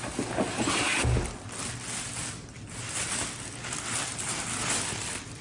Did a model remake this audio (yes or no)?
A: no